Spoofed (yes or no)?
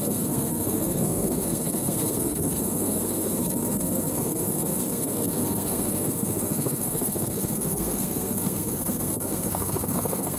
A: yes